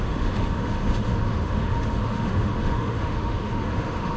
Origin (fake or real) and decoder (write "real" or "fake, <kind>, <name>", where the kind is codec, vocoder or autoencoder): fake, autoencoder, DAC-VAE